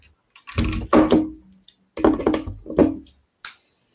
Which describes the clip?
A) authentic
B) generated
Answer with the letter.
A